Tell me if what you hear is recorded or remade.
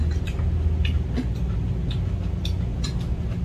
recorded